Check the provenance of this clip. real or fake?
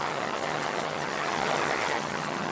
fake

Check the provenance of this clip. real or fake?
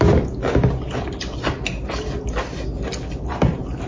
real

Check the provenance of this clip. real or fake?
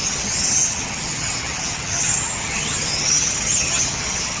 fake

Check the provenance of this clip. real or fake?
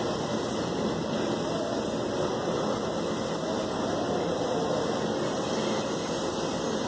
real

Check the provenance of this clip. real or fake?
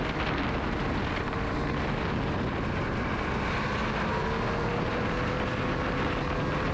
real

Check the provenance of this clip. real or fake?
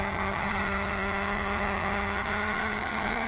fake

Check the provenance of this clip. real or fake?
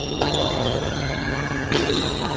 fake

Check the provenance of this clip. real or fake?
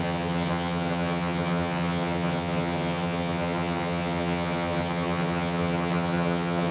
fake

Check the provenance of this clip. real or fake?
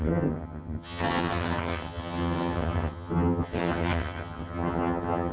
fake